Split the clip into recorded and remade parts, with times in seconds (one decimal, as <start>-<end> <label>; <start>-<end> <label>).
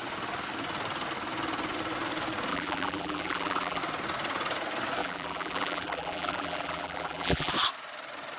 0.0-2.5 recorded; 2.5-3.8 remade; 3.8-5.0 recorded; 5.0-7.5 remade; 7.5-8.4 recorded